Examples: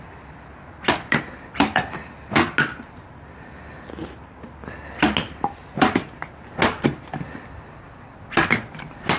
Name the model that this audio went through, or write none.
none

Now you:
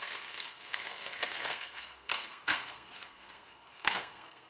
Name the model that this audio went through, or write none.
codec, SNAC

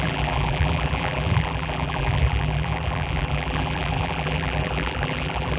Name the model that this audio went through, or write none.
vocoder, BigVGAN v2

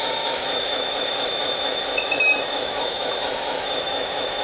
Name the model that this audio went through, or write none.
autoencoder, DAC-VAE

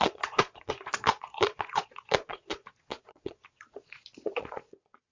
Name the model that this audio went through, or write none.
vocoder, Vocos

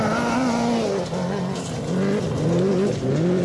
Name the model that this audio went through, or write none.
none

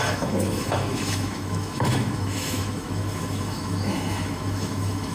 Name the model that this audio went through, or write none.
autoencoder, DAC-VAE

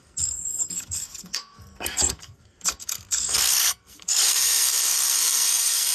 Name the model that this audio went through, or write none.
codec, SNAC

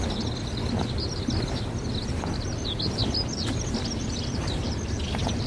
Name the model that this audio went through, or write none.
none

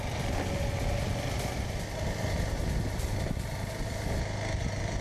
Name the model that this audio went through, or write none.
none